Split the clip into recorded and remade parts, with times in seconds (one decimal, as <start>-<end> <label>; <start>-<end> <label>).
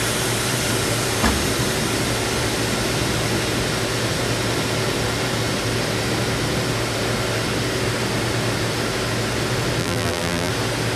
0.0-9.8 recorded; 9.8-10.5 remade; 10.5-11.0 recorded